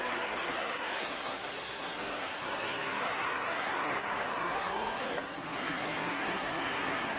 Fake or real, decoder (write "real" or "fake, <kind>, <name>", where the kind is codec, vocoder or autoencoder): fake, codec, SNAC